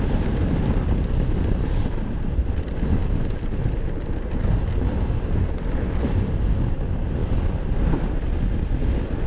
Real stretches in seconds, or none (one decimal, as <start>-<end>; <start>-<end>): 0.0-9.3